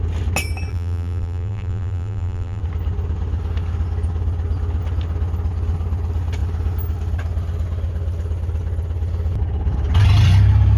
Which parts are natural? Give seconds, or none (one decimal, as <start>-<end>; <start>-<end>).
0.0-0.7; 2.6-10.8